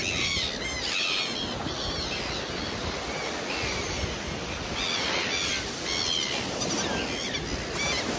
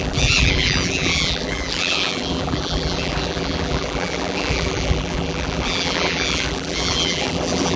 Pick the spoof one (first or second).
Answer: second